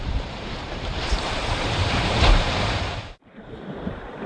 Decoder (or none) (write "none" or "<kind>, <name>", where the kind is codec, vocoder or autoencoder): vocoder, BigVGAN v2